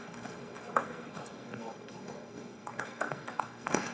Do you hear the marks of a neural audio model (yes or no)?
yes